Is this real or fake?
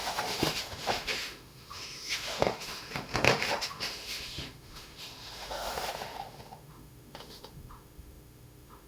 fake